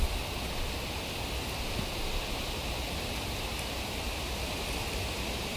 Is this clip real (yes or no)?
yes